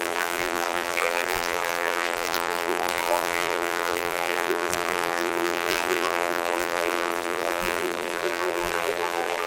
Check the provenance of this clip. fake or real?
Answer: fake